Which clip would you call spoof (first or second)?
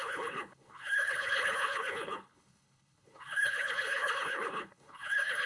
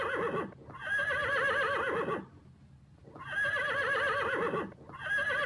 first